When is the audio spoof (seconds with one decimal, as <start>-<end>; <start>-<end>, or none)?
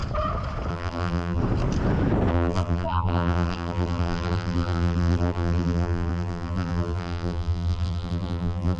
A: 0.7-1.4; 2.3-8.8